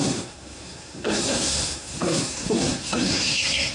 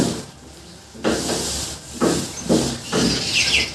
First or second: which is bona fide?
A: second